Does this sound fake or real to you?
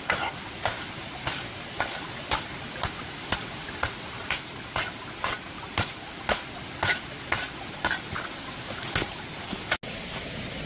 real